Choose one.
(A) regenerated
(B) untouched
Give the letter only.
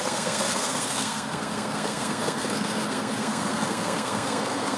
A